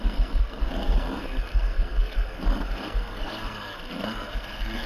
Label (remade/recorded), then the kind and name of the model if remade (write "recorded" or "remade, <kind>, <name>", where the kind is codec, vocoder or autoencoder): remade, codec, SNAC